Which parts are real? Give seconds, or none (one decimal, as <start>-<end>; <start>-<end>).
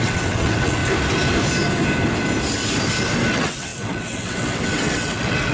0.8-3.3